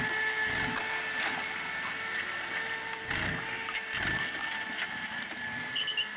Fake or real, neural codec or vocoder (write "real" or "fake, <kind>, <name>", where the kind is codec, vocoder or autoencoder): real